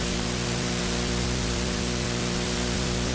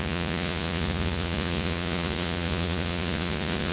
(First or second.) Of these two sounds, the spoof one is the second